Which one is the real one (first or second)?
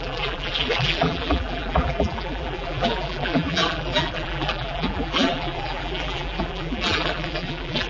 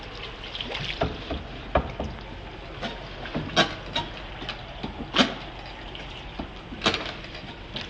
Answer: second